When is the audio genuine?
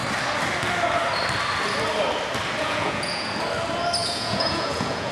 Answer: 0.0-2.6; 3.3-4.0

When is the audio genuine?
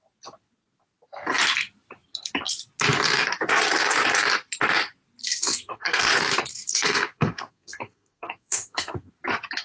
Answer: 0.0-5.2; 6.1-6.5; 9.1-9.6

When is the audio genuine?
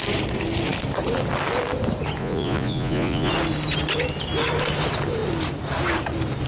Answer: 0.0-2.2; 3.3-6.5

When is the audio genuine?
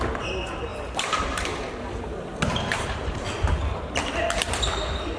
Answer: 0.0-0.7; 3.3-5.2